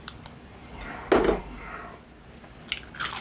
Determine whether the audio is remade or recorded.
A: recorded